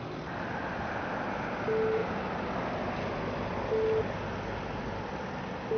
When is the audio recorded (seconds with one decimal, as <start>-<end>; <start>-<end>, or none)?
0.0-5.8